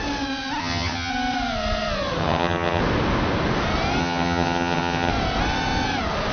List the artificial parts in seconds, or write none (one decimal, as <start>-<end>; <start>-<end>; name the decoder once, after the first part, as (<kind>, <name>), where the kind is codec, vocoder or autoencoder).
0.6-1.1 (vocoder, HiFi-GAN); 2.2-2.8; 4.0-5.1

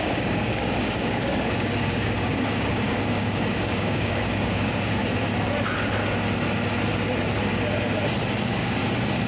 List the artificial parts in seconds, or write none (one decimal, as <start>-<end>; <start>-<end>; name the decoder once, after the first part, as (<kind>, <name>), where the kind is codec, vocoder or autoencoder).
0.0-5.0 (codec, DAC); 8.4-8.8

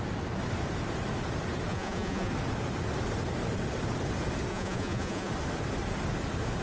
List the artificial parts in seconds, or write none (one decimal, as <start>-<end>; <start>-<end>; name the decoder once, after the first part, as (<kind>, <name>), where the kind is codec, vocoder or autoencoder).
1.7-2.3 (vocoder, Vocos); 4.5-5.3